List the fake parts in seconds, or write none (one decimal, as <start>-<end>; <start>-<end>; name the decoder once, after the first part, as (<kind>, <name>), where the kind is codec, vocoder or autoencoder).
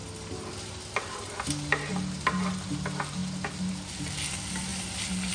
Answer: none